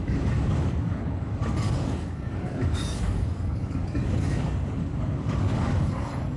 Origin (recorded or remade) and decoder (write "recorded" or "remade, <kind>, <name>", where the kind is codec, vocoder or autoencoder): remade, codec, DAC